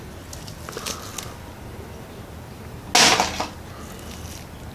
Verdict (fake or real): real